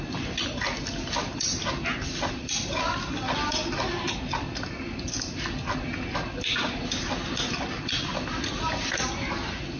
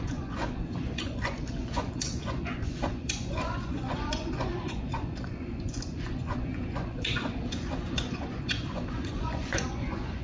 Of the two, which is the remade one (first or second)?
second